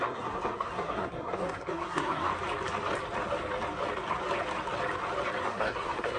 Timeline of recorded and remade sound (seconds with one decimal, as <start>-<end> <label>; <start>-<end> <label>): 0.0-2.3 remade; 2.3-5.4 recorded; 5.4-6.2 remade